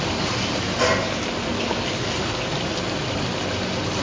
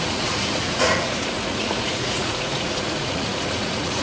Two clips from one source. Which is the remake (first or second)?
second